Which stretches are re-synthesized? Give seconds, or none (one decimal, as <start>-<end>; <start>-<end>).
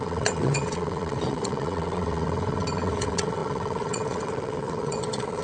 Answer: 0.0-5.4